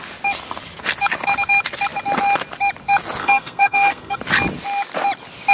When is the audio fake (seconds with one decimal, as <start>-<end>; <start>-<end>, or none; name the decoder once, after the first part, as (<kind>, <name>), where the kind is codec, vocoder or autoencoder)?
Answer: 3.2-4.2 (codec, SNAC)